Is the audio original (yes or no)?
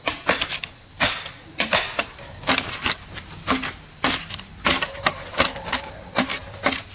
yes